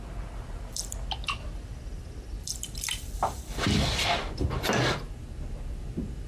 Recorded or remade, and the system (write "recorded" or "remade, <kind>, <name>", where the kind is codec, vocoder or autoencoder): recorded